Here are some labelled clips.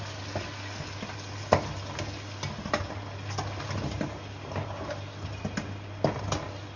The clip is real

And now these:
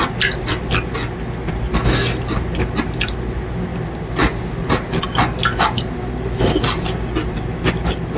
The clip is real